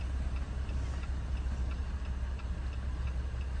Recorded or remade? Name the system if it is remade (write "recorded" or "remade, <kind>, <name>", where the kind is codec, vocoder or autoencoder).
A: recorded